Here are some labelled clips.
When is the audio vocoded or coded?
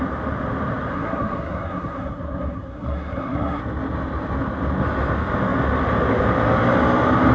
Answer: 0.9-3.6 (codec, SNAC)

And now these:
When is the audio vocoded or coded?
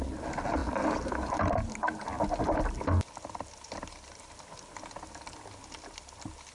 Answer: none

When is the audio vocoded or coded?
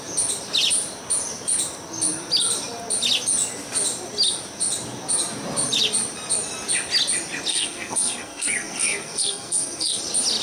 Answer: 7.5-10.0 (codec, SNAC)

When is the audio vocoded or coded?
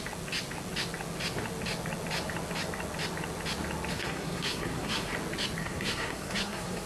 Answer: 3.9-5.1 (codec, SNAC); 5.6-6.9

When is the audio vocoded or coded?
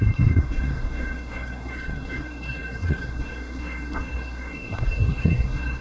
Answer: 0.0-5.8 (codec, SNAC)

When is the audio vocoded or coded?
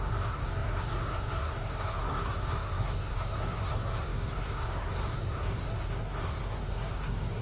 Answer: 0.0-7.4 (codec, SNAC)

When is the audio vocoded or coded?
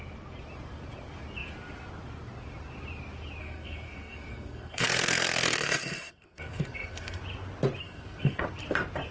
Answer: 3.4-7.2 (codec, SNAC); 7.8-8.4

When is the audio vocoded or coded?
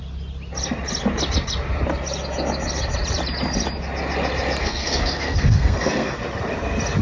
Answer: 4.6-6.2 (codec, SNAC)